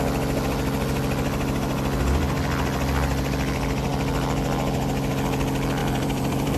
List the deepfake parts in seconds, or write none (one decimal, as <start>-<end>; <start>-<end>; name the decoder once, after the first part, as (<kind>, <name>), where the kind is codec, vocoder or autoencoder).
5.8-6.6 (vocoder, BigVGAN v2)